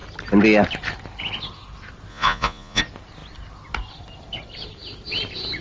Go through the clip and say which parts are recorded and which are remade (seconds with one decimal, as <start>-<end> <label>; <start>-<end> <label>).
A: 0.0-2.1 recorded; 2.1-2.8 remade; 2.8-5.6 recorded